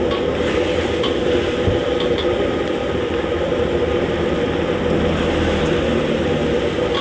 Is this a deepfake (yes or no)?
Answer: no